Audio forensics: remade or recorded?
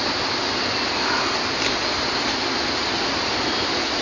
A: recorded